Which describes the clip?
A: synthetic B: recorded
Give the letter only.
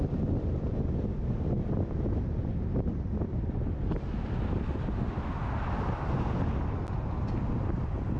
B